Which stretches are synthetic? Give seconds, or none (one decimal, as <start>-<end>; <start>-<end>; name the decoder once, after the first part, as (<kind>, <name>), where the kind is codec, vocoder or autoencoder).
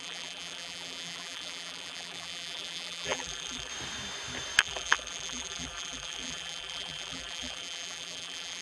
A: 0.0-3.7 (vocoder, BigVGAN v2); 4.6-8.6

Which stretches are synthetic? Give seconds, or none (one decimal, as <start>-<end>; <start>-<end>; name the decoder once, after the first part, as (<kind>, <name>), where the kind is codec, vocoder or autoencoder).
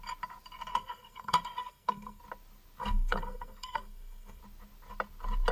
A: 0.7-2.2 (codec, SNAC); 2.8-4.4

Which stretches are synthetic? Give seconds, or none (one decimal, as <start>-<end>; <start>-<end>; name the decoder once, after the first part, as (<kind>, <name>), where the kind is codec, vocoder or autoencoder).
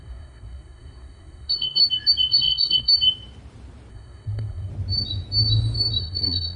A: 0.0-1.8 (codec, SNAC); 2.3-2.9; 3.9-4.7; 6.0-6.6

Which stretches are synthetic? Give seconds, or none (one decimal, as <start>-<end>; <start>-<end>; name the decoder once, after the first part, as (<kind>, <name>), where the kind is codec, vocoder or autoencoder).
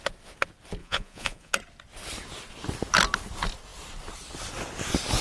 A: 0.8-1.5 (vocoder, Vocos)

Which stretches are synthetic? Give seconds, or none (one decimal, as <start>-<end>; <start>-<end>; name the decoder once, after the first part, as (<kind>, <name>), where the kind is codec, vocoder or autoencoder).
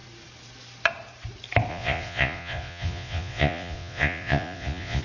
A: 1.7-5.0 (vocoder, Vocos)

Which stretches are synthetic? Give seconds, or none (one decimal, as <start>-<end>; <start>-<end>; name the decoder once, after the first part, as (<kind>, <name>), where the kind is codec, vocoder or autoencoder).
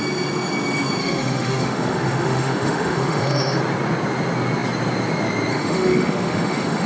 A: 1.0-3.6 (autoencoder, DAC-VAE); 5.5-6.9